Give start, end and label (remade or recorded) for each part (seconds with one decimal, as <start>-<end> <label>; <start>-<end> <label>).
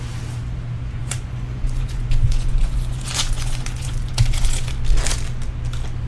0.0-1.0 recorded; 1.0-4.7 remade; 4.7-6.1 recorded